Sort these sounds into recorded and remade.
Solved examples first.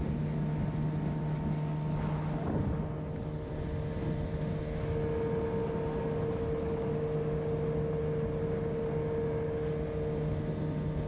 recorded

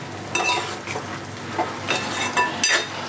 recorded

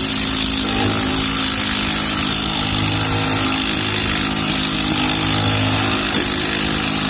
recorded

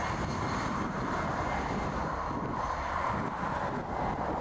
recorded